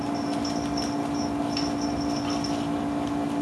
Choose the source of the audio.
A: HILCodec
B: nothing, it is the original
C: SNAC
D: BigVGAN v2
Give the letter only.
B